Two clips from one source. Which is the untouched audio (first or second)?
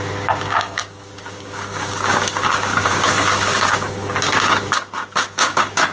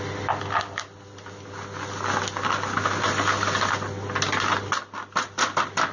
second